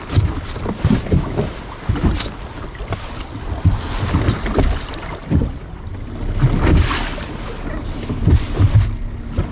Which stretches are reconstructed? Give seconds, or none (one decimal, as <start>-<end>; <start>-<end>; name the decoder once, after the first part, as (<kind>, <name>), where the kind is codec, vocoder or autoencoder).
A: none